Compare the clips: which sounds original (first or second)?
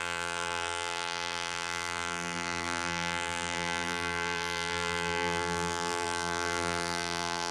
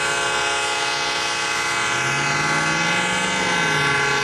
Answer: second